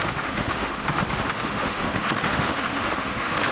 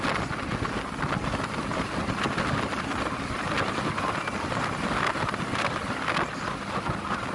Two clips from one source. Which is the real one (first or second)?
second